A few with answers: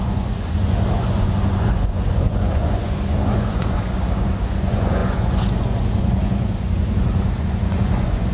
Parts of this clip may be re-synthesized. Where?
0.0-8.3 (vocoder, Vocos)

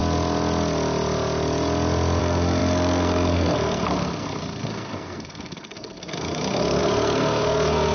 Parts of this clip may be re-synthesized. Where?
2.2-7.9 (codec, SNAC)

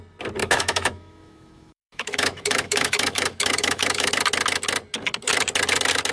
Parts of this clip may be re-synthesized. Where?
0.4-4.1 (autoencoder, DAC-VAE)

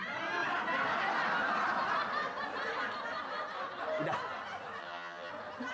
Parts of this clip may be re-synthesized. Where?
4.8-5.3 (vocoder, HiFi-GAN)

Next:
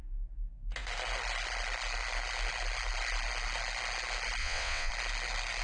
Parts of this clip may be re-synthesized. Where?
4.4-4.9 (vocoder, WaveNeXt)

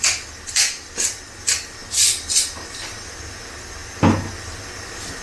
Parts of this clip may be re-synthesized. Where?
none

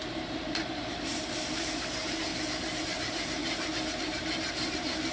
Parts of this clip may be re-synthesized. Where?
0.0-2.3 (vocoder, BigVGAN v2); 2.8-3.4; 4.0-5.1